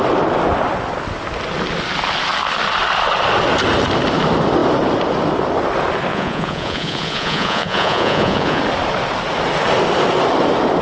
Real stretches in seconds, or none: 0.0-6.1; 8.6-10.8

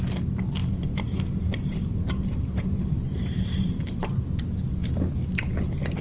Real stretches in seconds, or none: 0.0-0.6; 4.2-6.0

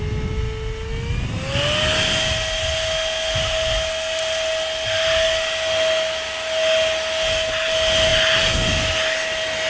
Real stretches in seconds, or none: 0.0-9.7

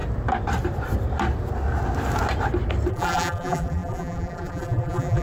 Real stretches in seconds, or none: 0.0-2.9

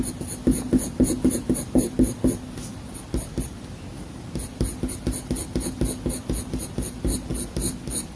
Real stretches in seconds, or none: 0.0-8.2

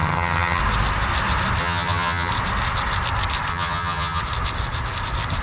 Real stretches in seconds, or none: 0.6-1.6; 2.3-3.5; 4.2-5.4